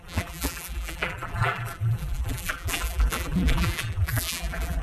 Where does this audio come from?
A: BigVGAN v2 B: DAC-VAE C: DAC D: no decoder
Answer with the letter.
A